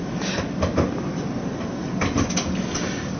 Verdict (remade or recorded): recorded